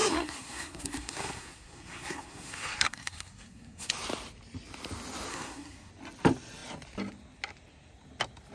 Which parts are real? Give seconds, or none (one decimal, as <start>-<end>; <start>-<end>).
3.9-5.3; 5.9-8.5